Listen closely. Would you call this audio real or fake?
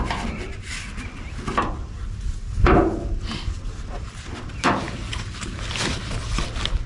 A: real